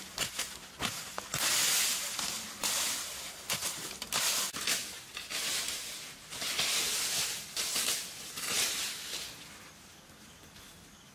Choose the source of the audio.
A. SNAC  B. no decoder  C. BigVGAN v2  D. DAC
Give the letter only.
B